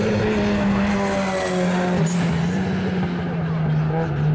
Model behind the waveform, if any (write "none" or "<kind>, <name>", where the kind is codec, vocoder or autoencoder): none